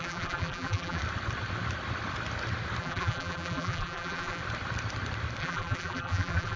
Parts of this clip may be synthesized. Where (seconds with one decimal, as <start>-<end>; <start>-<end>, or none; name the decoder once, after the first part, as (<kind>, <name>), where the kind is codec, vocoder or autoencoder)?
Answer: 0.0-1.0 (vocoder, BigVGAN v2); 2.8-4.4; 5.4-6.6